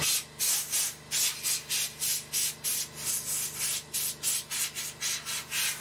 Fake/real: real